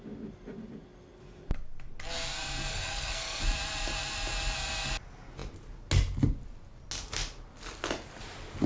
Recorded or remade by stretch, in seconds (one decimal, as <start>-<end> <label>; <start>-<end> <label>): 0.0-2.7 recorded; 2.7-3.4 remade; 3.4-8.7 recorded